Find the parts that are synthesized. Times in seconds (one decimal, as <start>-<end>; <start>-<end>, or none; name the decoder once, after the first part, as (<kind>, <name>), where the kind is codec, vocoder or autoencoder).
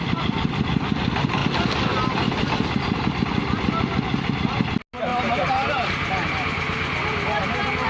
5.1-6.3 (vocoder, BigVGAN v2)